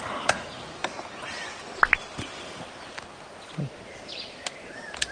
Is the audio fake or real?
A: real